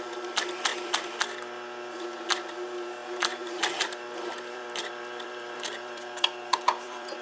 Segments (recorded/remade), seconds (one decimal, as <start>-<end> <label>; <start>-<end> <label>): 0.0-0.7 recorded; 0.7-1.2 remade; 1.2-3.0 recorded; 3.0-7.2 remade